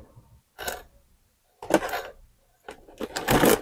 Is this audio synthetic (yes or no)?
no